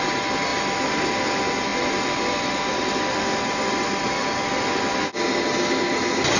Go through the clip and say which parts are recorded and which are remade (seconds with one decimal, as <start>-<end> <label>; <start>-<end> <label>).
0.0-6.4 recorded